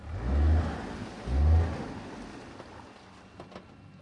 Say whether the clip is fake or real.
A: real